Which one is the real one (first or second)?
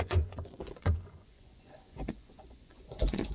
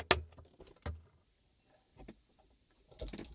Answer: second